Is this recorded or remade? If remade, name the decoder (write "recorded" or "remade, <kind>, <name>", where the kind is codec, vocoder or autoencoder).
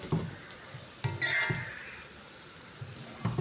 recorded